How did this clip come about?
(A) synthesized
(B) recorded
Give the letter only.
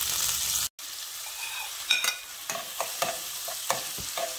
B